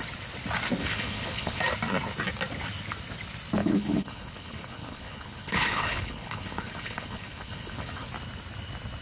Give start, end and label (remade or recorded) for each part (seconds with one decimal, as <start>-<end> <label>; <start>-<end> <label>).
0.0-0.8 recorded; 0.8-1.6 remade; 1.6-3.6 recorded; 3.6-8.1 remade; 8.1-9.0 recorded